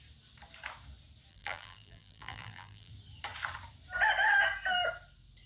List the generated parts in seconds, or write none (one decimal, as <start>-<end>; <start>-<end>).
1.3-2.9